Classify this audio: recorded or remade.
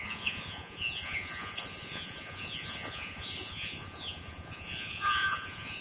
remade